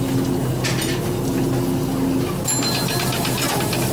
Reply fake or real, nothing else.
real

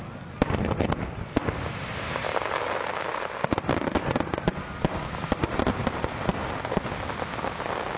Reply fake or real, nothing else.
real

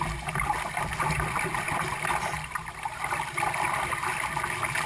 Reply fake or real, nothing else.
real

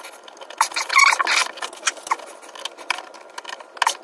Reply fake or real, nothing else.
real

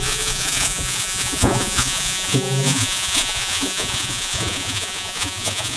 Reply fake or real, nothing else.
fake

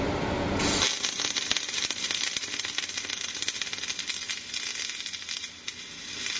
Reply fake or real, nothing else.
real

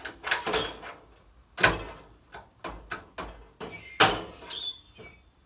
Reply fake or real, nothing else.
real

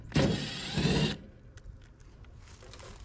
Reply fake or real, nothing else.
real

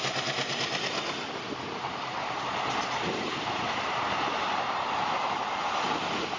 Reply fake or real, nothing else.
real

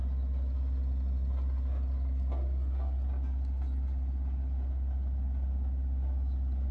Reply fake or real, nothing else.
real